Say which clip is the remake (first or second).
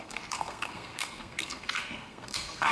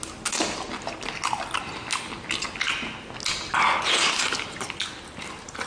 first